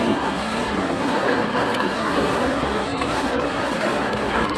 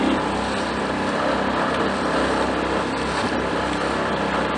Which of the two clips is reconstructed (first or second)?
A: first